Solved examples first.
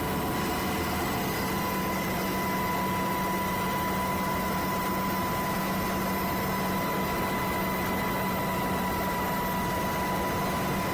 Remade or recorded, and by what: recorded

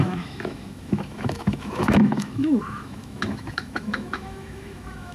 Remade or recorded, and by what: remade, autoencoder, DAC-VAE